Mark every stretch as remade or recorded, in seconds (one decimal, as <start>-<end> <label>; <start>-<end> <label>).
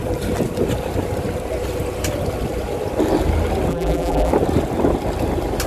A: 0.0-3.7 recorded; 3.7-4.3 remade; 4.3-5.7 recorded